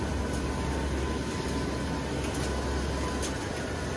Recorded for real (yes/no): yes